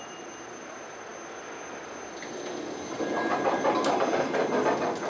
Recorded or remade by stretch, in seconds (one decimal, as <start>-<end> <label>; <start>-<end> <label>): 0.0-5.1 recorded